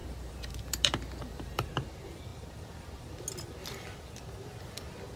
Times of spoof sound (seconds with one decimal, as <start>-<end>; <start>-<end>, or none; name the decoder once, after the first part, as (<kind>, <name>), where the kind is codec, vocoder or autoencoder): 0.0-1.7 (vocoder, BigVGAN v2)